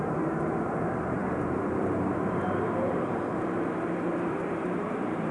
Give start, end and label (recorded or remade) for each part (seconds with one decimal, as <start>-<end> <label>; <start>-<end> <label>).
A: 0.0-5.3 remade